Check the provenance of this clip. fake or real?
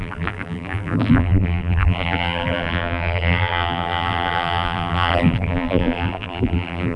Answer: fake